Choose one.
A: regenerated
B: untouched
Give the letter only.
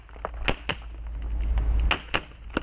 B